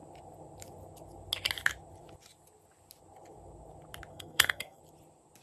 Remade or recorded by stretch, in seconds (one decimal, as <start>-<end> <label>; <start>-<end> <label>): 0.0-4.1 recorded; 4.1-4.8 remade; 4.8-5.4 recorded